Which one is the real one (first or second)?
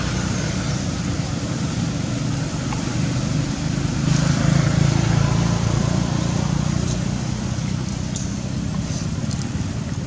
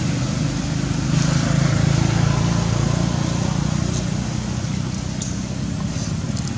second